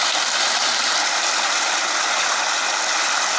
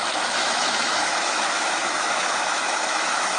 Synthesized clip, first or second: second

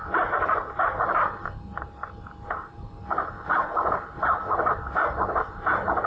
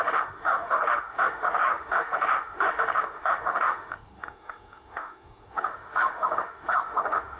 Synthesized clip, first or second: second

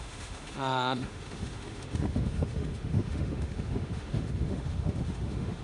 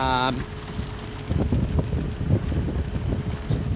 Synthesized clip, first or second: first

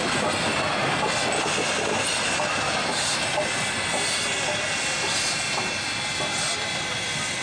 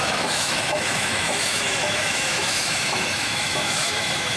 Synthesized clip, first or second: second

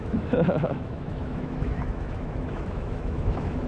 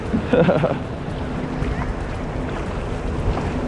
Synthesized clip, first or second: first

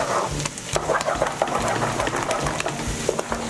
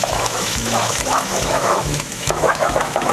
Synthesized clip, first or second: second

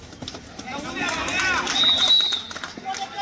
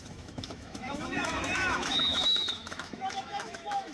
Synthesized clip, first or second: second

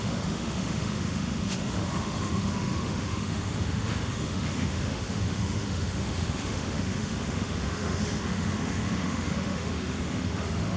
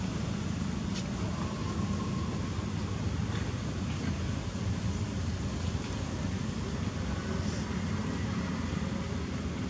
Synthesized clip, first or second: first